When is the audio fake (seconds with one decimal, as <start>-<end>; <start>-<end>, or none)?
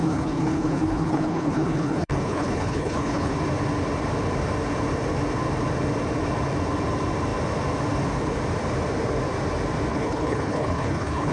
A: 0.0-3.3; 9.9-11.3